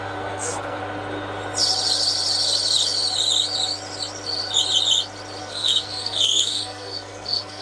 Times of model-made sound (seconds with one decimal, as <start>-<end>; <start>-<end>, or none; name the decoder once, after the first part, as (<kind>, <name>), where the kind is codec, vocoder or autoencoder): 0.0-0.8 (codec, SNAC); 5.4-7.6